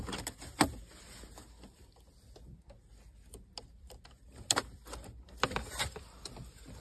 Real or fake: real